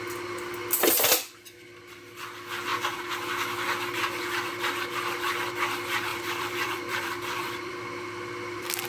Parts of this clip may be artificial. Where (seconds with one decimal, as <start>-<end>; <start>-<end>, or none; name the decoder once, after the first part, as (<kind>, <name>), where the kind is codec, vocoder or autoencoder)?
6.1-7.8 (vocoder, BigVGAN v2)